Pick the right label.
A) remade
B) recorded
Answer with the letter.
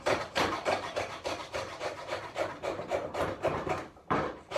A